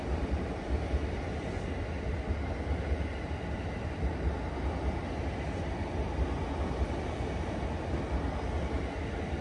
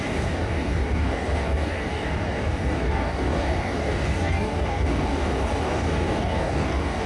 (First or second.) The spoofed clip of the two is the second